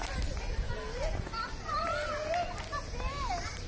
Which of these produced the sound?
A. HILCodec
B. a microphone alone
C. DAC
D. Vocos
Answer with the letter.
B